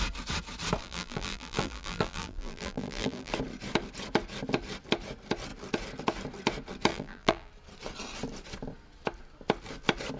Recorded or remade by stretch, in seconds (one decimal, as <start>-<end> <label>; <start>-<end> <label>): 0.0-0.8 recorded; 0.8-3.3 remade; 3.3-6.9 recorded; 6.9-7.5 remade; 7.5-10.2 recorded